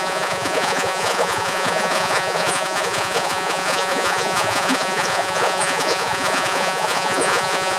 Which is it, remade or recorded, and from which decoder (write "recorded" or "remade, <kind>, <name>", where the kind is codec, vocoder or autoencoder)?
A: remade, vocoder, Vocos